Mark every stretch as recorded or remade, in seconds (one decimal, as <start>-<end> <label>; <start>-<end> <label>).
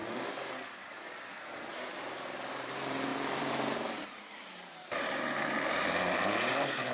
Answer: 0.0-2.5 recorded; 2.5-6.9 remade